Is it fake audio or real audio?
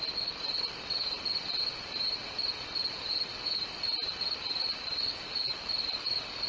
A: real